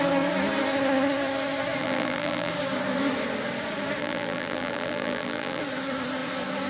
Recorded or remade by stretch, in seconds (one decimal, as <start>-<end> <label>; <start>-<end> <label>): 0.0-1.8 recorded; 1.8-2.5 remade; 2.5-4.0 recorded; 4.0-5.6 remade; 5.6-6.7 recorded